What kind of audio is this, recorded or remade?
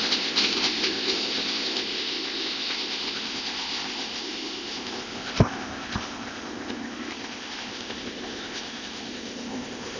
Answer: remade